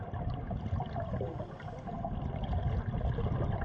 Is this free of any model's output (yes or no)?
yes